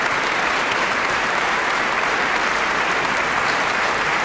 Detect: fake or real fake